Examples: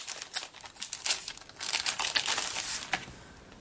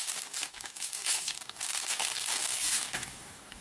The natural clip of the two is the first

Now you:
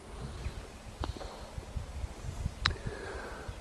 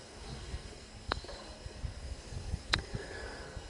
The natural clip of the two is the first